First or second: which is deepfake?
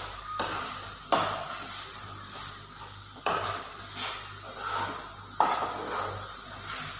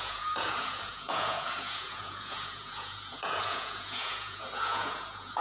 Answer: second